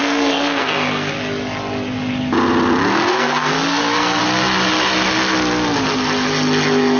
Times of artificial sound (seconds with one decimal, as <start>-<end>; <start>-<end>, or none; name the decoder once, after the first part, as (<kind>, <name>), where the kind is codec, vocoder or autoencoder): 0.0-1.1 (codec, SNAC); 2.9-4.2